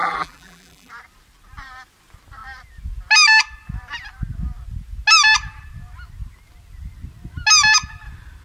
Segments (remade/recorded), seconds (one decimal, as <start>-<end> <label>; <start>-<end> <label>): 0.0-0.9 remade; 0.9-8.4 recorded